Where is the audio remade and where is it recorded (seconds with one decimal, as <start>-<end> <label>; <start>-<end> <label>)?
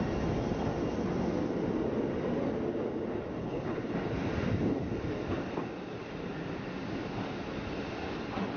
0.0-3.4 recorded; 3.4-3.9 remade; 3.9-8.6 recorded